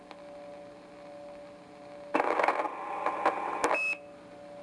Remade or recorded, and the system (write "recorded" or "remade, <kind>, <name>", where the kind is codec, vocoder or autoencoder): recorded